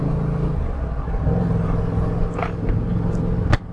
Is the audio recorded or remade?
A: recorded